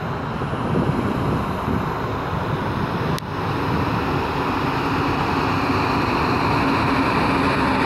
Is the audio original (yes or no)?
yes